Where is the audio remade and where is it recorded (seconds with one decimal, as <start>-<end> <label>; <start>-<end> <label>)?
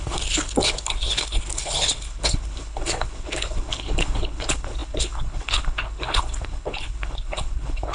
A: 0.0-7.9 remade